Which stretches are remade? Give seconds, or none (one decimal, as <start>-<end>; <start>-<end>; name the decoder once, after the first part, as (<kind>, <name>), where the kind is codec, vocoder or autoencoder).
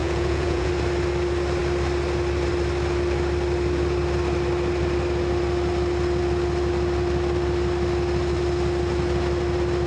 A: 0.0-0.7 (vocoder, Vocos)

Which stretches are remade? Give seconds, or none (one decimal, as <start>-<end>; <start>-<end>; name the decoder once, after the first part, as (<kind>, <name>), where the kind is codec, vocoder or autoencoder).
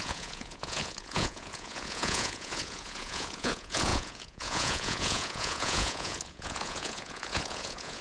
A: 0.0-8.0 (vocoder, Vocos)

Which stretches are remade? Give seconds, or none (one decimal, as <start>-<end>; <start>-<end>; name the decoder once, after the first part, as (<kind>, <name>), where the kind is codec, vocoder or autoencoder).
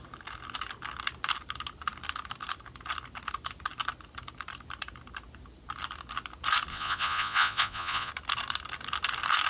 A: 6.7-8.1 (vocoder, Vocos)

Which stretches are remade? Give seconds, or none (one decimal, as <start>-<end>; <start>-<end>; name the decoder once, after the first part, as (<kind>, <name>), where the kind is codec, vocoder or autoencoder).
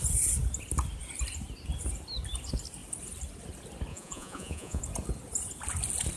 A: 3.9-4.8 (vocoder, Vocos)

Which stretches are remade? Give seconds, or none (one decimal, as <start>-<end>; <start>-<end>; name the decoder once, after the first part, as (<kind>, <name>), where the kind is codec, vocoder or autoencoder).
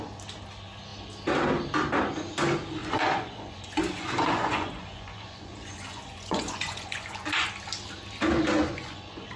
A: 2.8-7.5 (vocoder, Vocos); 8.6-9.4